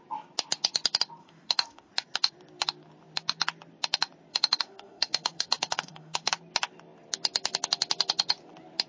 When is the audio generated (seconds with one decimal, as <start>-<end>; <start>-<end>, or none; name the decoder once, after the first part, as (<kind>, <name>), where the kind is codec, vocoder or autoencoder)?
1.2-1.9 (autoencoder, DAC-VAE); 4.3-6.3